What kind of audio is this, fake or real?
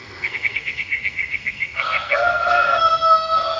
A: fake